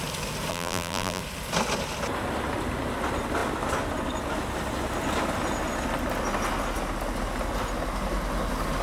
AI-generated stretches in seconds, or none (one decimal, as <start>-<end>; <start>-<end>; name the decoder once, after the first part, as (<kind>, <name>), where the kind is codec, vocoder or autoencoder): 0.5-1.2 (vocoder, BigVGAN v2)